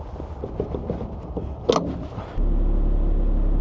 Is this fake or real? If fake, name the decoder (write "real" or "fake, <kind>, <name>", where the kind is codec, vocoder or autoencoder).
real